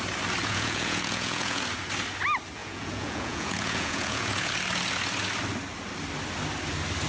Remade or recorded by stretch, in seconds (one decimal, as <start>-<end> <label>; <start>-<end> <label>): 0.0-0.4 recorded; 0.4-1.6 remade; 1.6-2.6 recorded; 2.6-4.5 remade; 4.5-7.1 recorded